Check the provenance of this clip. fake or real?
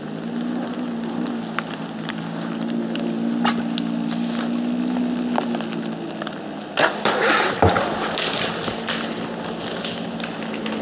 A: real